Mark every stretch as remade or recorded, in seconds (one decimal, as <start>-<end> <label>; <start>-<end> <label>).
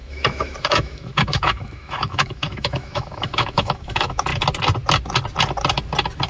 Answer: 0.0-4.3 remade; 4.3-6.3 recorded